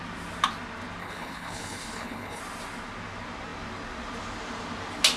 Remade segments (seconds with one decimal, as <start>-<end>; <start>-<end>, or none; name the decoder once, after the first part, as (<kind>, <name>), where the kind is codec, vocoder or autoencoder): 1.0-2.4 (codec, HILCodec)